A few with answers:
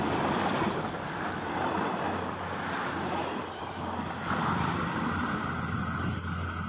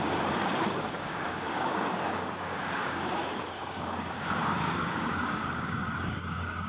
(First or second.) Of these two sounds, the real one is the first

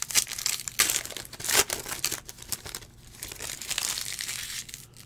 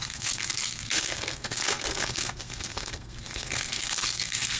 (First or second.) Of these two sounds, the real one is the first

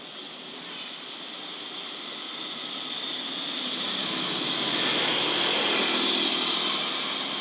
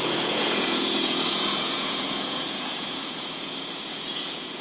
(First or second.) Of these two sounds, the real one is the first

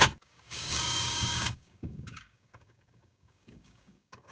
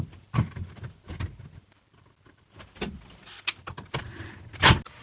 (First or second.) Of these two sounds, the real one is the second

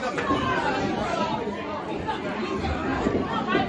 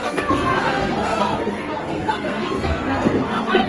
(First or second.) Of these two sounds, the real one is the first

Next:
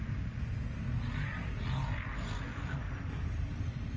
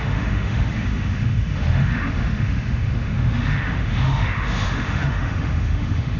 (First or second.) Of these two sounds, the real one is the first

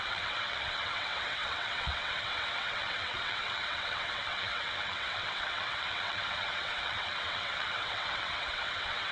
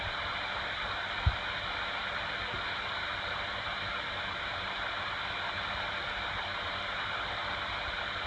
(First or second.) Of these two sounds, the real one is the second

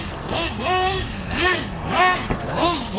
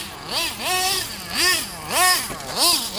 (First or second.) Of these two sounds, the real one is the second